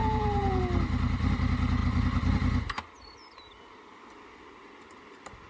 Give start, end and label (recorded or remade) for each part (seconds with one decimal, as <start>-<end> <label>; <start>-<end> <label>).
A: 0.0-0.6 remade; 0.6-5.5 recorded